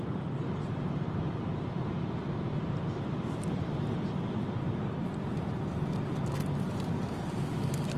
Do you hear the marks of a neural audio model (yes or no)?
no